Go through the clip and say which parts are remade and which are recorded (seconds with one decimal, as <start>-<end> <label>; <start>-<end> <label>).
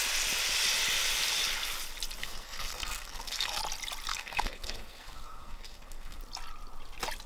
0.0-2.2 recorded; 2.2-3.6 remade; 3.6-4.1 recorded; 4.1-6.2 remade; 6.2-7.3 recorded